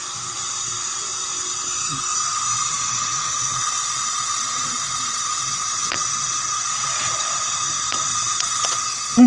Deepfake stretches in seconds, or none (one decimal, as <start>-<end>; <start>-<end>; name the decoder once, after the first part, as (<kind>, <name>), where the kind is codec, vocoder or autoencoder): 2.7-7.3 (vocoder, WaveNeXt); 8.1-9.3